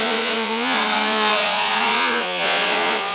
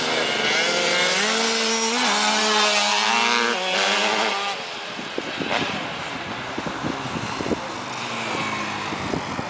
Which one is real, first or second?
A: second